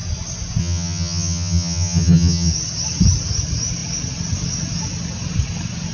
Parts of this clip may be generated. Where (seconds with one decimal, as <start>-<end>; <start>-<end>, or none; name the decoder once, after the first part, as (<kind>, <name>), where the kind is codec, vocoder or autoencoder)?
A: 0.6-2.5 (vocoder, HiFi-GAN)